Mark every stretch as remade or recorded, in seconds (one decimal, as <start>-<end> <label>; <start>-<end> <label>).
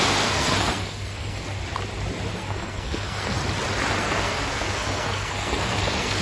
0.0-1.6 remade; 1.6-2.3 recorded; 2.3-3.4 remade; 3.4-3.9 recorded; 3.9-6.2 remade